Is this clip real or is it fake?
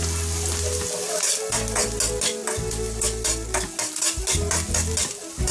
real